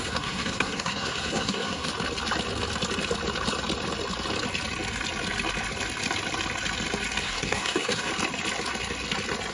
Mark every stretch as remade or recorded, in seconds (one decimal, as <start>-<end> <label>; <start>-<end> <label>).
0.0-1.9 remade; 1.9-7.2 recorded; 7.2-8.1 remade; 8.1-9.5 recorded